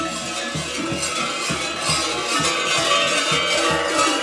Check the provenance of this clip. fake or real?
real